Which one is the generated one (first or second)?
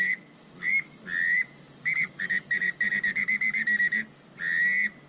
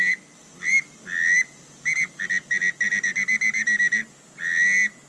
first